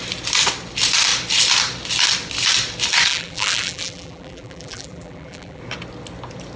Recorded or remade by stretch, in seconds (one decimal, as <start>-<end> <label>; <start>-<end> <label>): 0.0-3.1 recorded; 3.1-5.6 remade; 5.6-6.6 recorded